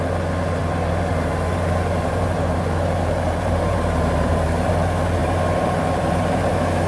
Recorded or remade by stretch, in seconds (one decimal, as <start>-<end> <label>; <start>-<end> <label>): 0.0-0.6 recorded; 0.6-4.7 remade; 4.7-5.2 recorded; 5.2-6.5 remade; 6.5-6.9 recorded